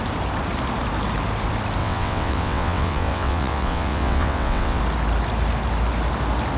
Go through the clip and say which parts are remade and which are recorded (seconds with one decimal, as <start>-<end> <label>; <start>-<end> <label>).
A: 0.0-1.8 recorded; 1.8-4.8 remade; 4.8-6.6 recorded